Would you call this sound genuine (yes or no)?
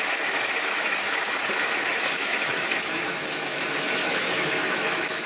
no